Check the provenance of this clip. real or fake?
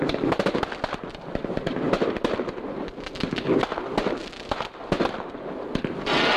real